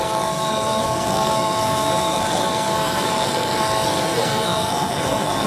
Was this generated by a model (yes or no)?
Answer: yes